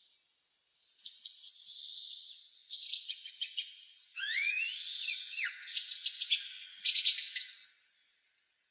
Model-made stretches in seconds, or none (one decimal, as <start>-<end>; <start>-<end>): 2.6-7.5